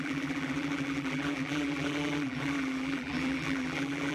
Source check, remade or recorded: remade